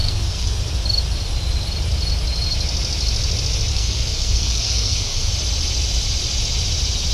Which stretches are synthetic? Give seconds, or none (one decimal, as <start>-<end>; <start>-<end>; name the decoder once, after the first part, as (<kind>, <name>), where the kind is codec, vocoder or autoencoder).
0.0-0.6 (codec, SNAC); 3.7-5.3